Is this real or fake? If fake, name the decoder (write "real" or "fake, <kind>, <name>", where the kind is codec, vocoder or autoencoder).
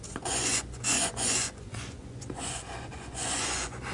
fake, vocoder, Vocos